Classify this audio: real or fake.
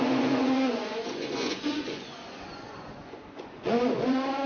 fake